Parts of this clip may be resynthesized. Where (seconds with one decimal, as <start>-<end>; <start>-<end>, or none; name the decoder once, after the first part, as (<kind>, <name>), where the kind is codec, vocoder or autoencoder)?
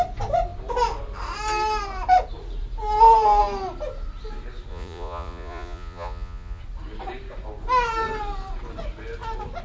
4.7-6.6 (vocoder, Vocos)